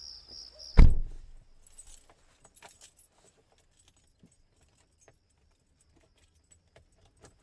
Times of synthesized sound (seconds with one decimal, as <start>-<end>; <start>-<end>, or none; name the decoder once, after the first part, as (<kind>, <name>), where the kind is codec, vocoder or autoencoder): none